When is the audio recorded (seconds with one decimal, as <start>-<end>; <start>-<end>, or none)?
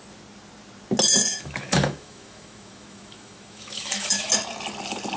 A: 0.0-1.3; 4.3-5.2